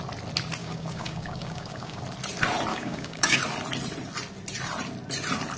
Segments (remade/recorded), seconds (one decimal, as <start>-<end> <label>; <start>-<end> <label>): 0.0-0.6 recorded; 0.6-2.0 remade; 2.0-2.7 recorded; 2.7-3.4 remade; 3.4-5.6 recorded